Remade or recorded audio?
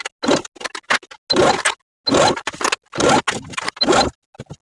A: recorded